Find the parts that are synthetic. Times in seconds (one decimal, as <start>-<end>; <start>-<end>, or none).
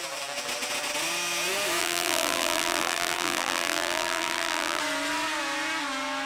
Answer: 1.8-4.8